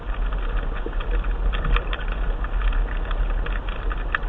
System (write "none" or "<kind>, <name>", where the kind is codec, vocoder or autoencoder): none